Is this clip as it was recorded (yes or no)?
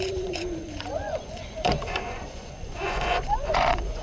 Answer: no